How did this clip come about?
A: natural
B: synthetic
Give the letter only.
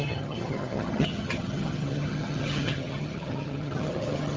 B